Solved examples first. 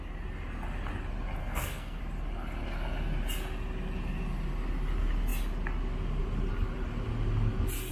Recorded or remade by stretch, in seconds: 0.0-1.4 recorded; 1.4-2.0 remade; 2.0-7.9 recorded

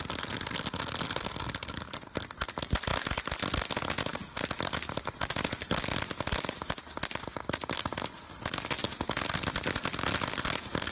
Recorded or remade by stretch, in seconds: 0.0-10.9 recorded

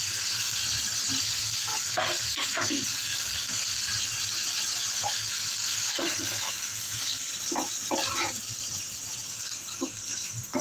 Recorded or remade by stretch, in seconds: 0.0-0.6 remade; 0.6-1.2 recorded; 1.2-3.9 remade; 3.9-4.9 recorded; 4.9-7.3 remade; 7.3-9.3 recorded; 9.3-10.6 remade